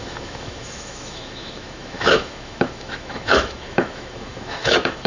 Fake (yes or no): yes